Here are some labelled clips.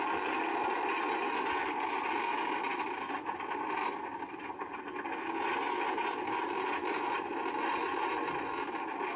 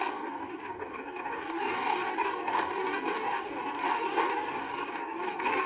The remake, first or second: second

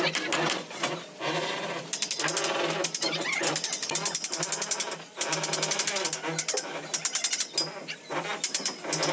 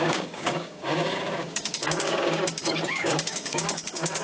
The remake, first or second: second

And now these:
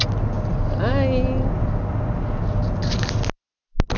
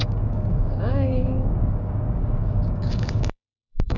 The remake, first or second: second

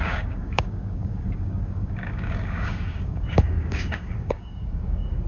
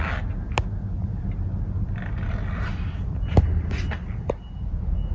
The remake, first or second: first